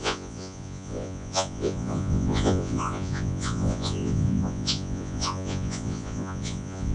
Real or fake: fake